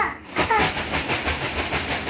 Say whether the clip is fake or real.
real